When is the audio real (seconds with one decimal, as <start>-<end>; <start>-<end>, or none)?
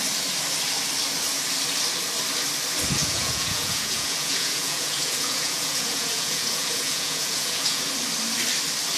0.0-3.0; 7.9-9.0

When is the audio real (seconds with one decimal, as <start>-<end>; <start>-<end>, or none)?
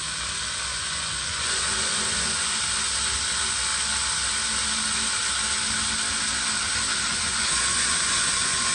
0.0-0.7; 2.6-7.1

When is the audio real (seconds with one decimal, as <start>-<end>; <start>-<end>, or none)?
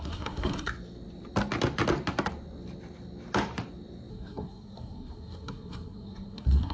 0.7-4.1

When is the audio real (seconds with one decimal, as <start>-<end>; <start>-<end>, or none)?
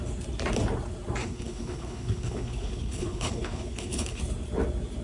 0.0-1.2; 4.2-5.0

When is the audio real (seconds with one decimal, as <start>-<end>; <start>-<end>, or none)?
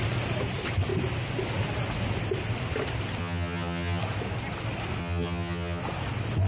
0.0-3.2; 4.0-5.0; 5.8-6.5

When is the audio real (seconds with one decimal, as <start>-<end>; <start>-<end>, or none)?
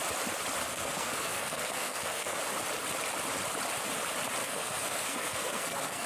0.0-0.7; 2.4-4.4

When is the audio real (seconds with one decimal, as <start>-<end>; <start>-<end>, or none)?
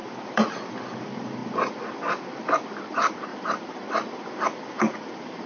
0.0-1.0; 3.3-5.5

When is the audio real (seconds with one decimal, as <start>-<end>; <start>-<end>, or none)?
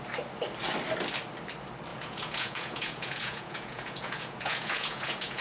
0.0-1.9